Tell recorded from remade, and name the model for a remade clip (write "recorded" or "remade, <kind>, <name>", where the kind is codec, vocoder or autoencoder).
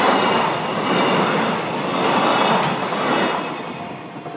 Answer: recorded